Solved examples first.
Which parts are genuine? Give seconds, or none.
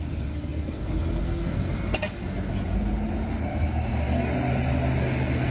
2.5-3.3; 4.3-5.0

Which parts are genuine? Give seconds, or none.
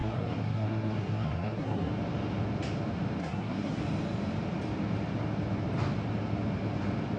1.9-3.2; 3.8-7.2